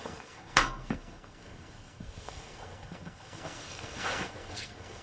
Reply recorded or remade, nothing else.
remade